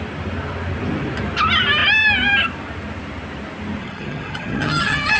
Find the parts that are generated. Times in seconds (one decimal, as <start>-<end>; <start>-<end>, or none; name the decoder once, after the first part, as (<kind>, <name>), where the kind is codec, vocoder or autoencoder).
3.8-5.2 (vocoder, HiFi-GAN)